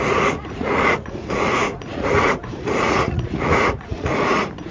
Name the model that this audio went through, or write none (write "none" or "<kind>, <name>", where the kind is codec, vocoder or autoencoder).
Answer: vocoder, Vocos